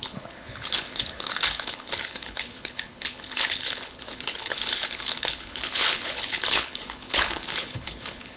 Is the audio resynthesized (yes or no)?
yes